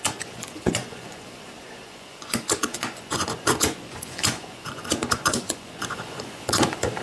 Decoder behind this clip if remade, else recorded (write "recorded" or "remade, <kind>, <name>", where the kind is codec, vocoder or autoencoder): remade, vocoder, Vocos